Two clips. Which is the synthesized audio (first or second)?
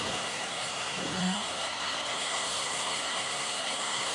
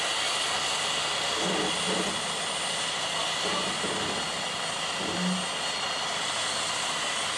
first